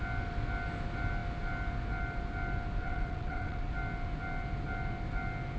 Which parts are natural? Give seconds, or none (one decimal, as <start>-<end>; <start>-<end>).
0.0-2.8; 3.7-5.6